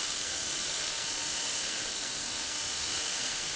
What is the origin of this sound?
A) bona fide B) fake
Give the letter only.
B